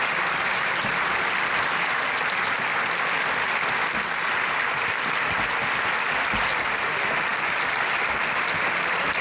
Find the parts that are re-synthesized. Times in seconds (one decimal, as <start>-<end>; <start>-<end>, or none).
none